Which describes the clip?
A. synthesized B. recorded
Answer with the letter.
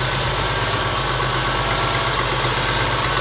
B